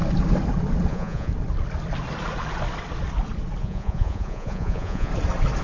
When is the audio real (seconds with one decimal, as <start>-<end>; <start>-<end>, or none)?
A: 0.0-0.9; 1.3-3.6; 5.1-5.6

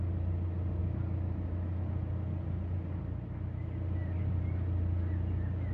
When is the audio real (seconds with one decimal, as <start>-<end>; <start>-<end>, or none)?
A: 0.0-5.7

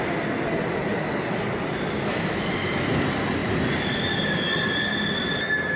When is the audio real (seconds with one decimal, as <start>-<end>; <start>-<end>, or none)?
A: 0.0-5.8

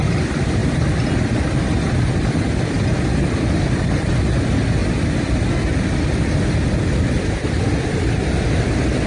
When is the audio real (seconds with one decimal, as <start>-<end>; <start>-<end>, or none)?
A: 0.0-9.1

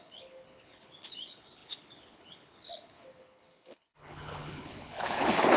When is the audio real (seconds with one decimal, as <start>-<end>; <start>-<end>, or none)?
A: none

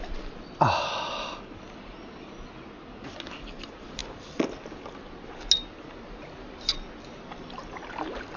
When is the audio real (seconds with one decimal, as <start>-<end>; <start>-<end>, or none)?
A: 0.0-8.4

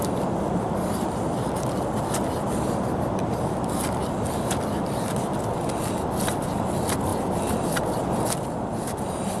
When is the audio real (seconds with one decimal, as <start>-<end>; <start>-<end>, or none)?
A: 0.0-9.4

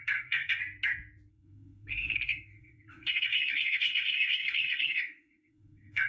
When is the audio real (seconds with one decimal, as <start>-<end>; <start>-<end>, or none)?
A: 0.6-1.3